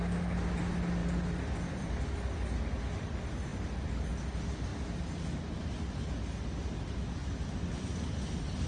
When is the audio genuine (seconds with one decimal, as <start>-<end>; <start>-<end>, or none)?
0.0-8.7